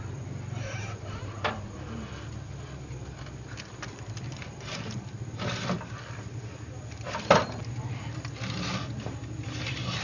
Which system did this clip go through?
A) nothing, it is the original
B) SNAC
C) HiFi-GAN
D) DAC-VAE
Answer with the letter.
A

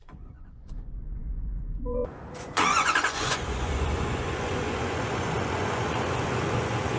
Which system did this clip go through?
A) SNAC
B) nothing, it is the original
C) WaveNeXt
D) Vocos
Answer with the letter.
D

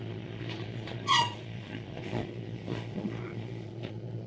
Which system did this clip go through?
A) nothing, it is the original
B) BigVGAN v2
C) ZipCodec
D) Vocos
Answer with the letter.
D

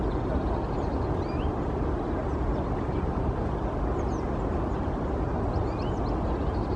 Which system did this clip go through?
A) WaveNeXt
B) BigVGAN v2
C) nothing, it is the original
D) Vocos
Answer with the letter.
C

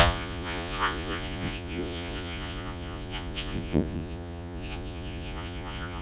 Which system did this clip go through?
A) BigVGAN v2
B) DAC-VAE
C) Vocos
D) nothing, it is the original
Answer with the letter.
C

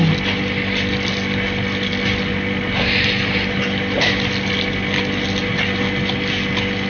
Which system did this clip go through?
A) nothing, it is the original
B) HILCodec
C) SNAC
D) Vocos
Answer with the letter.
A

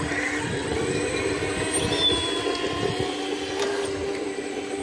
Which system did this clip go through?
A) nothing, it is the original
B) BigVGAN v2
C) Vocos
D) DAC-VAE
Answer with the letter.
A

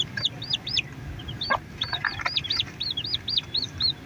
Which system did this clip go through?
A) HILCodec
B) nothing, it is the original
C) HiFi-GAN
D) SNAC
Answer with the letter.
B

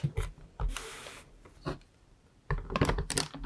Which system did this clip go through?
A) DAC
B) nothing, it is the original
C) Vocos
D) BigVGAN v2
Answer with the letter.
D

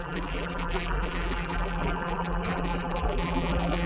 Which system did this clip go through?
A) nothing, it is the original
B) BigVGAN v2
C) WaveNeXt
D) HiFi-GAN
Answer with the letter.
B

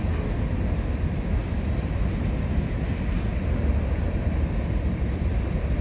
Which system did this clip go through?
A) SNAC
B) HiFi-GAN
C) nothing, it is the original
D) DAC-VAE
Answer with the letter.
C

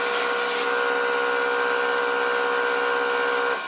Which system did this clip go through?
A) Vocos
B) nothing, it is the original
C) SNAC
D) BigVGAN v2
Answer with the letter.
B